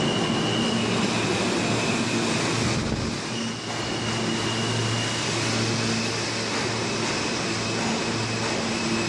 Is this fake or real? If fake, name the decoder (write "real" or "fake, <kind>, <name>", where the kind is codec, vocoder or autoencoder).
real